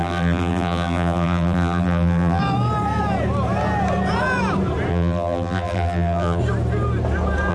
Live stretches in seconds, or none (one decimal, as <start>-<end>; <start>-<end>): 2.4-4.9; 6.4-7.5

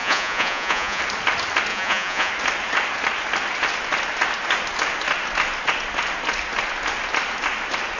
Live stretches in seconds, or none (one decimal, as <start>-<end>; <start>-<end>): 1.0-1.7; 2.3-8.0